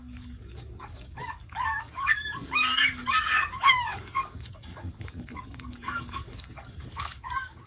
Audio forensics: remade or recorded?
remade